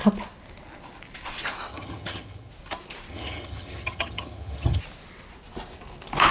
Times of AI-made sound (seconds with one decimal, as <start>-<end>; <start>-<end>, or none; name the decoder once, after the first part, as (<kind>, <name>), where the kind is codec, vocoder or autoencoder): 1.7-2.5 (vocoder, HiFi-GAN); 3.1-4.8